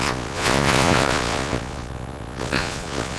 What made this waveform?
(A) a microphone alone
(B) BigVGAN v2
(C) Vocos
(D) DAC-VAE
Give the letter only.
C